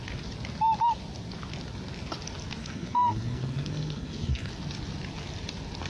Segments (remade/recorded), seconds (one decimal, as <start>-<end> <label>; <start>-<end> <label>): 0.0-2.6 recorded; 2.6-4.5 remade; 4.5-5.9 recorded